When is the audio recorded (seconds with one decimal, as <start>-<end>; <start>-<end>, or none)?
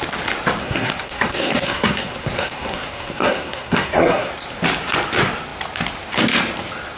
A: 0.0-0.6; 4.3-7.0